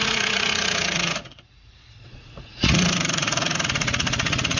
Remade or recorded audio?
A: remade